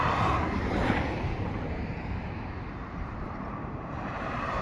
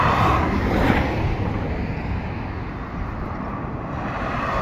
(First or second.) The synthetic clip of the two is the first